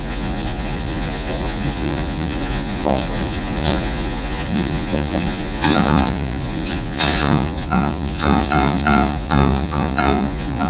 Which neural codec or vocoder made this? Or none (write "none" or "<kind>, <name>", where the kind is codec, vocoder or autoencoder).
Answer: vocoder, Vocos